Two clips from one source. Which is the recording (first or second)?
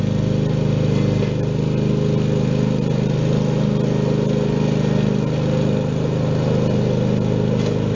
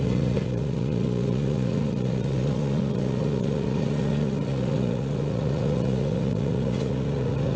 first